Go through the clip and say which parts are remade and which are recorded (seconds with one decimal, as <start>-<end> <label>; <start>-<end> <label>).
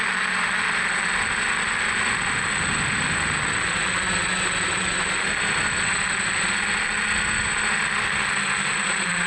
0.0-9.3 recorded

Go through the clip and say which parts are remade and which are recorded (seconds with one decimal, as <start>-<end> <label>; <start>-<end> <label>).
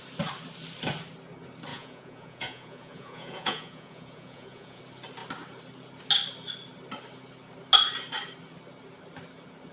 0.0-1.7 recorded; 1.7-4.8 remade; 4.8-9.7 recorded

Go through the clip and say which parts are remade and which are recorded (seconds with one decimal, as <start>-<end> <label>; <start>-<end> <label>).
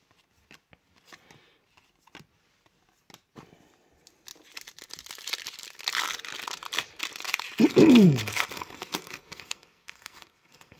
0.0-7.7 recorded; 7.7-10.8 remade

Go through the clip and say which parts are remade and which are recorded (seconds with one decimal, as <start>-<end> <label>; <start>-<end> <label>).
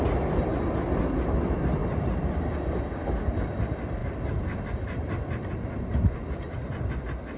0.0-1.8 recorded; 1.8-2.5 remade; 2.5-4.0 recorded; 4.0-6.9 remade; 6.9-7.4 recorded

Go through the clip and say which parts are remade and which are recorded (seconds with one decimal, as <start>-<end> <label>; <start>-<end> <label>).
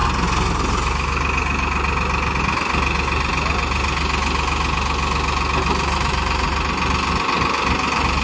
0.0-8.2 recorded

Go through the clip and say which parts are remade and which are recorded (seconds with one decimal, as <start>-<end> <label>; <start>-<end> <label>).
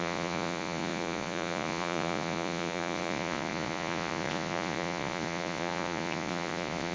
0.0-6.9 remade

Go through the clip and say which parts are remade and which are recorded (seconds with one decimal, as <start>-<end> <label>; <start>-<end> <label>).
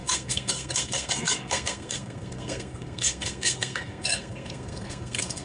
0.0-5.4 remade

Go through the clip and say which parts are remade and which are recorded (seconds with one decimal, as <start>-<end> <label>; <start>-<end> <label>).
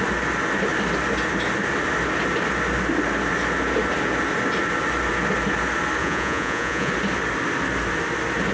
0.0-6.0 recorded; 6.0-6.9 remade; 6.9-8.5 recorded